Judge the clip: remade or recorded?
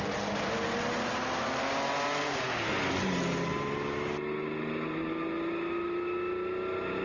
recorded